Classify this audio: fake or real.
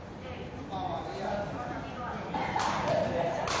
real